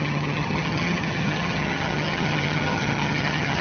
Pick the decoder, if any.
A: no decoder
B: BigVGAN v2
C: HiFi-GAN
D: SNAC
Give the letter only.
C